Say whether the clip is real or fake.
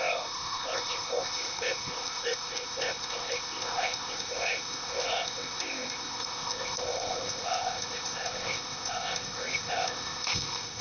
fake